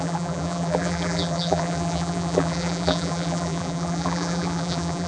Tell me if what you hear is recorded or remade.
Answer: remade